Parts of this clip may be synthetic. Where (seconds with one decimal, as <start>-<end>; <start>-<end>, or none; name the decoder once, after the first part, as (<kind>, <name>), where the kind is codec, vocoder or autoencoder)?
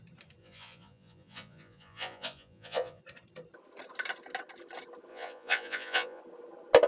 0.4-3.0 (vocoder, Vocos); 5.1-6.2